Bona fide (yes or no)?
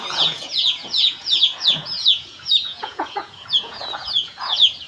no